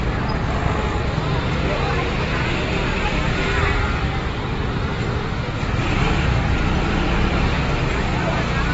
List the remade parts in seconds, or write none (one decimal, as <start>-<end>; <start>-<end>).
none